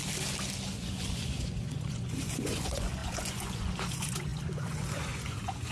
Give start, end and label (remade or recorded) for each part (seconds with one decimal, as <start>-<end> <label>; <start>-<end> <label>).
0.0-0.7 recorded; 0.7-5.7 remade